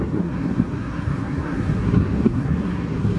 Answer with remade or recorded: remade